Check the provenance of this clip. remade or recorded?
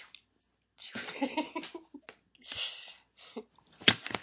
recorded